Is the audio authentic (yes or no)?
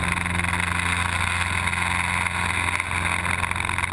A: yes